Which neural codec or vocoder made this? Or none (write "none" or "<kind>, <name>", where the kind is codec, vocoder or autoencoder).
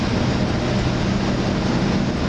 none